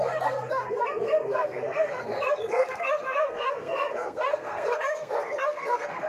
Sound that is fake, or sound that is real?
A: fake